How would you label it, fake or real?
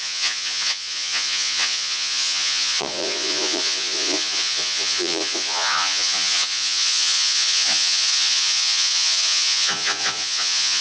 fake